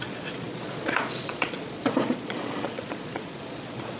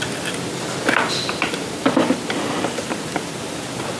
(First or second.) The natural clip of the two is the second